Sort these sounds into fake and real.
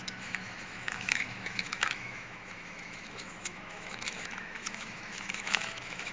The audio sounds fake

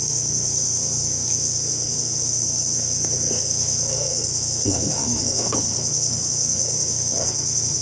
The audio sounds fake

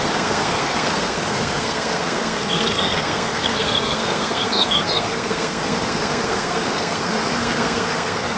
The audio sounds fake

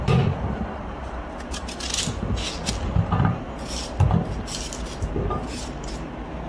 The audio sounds real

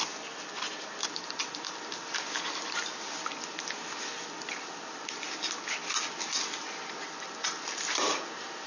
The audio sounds real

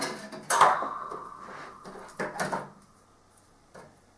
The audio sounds real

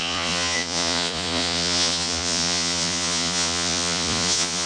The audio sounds fake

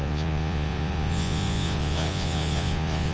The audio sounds fake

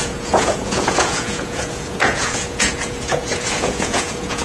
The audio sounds fake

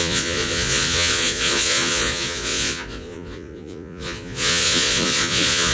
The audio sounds fake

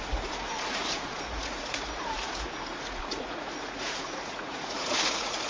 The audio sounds fake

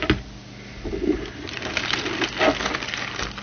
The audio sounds real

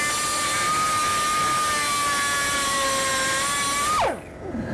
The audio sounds real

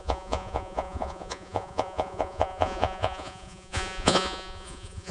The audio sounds fake